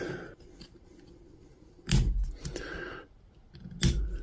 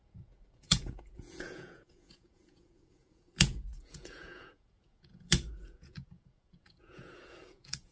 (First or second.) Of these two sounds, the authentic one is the first